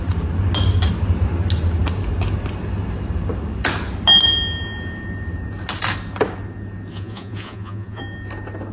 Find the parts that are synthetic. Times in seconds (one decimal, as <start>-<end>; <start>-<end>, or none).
6.9-8.0